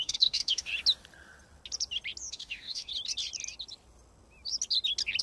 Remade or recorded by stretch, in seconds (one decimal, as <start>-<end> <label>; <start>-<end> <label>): 0.0-0.7 remade; 0.7-2.3 recorded; 2.3-2.9 remade; 2.9-5.2 recorded